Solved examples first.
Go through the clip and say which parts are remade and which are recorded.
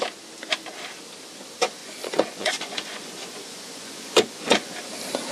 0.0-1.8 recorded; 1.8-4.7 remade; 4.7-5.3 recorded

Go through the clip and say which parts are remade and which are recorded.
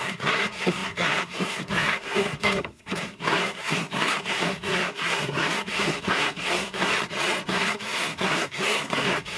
0.0-6.9 remade; 6.9-7.5 recorded; 7.5-9.4 remade